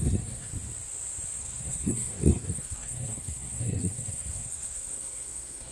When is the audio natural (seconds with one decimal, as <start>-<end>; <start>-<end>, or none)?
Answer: 0.5-1.4